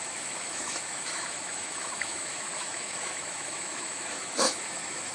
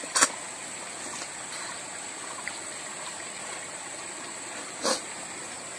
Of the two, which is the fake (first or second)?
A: first